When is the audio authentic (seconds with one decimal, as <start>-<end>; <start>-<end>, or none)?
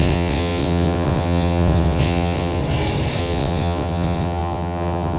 2.6-3.2